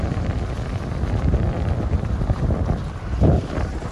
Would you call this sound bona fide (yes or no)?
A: yes